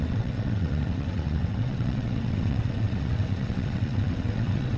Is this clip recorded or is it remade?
remade